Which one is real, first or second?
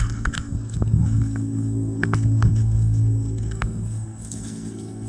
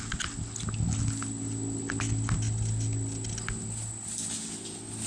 second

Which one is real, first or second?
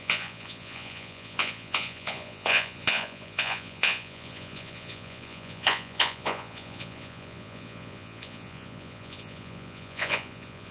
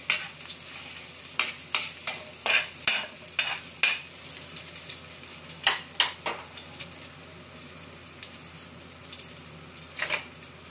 second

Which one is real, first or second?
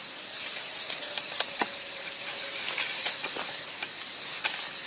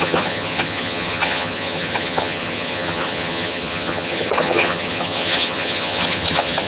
first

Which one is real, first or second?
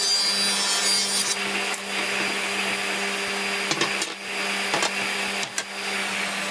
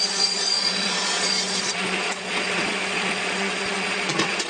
first